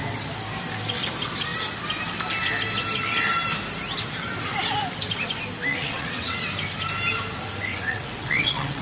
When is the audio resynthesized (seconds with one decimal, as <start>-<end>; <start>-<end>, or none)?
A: 5.7-6.4; 7.7-8.8